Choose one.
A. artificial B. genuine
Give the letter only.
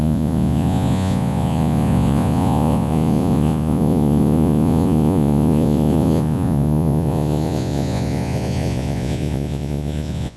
A